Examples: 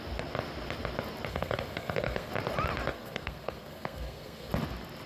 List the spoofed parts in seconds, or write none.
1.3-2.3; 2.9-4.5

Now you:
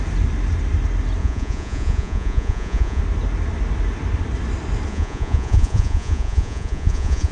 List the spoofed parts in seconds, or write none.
1.2-3.0; 4.9-7.3

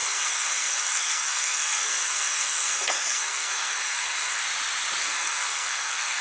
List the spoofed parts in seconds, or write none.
0.0-4.4; 5.0-6.2

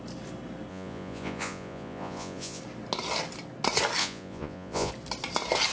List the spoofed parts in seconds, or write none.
0.7-2.6; 4.0-4.9

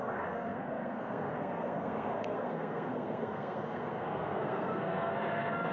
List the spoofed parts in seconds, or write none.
0.0-5.7